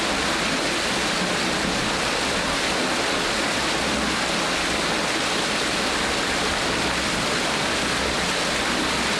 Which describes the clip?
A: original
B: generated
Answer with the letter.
A